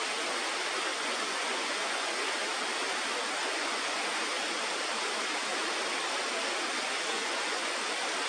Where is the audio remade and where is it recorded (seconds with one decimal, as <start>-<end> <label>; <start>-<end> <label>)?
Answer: 0.0-0.9 recorded; 0.9-2.3 remade; 2.3-3.4 recorded; 3.4-4.2 remade; 4.2-6.8 recorded; 6.8-7.8 remade; 7.8-8.3 recorded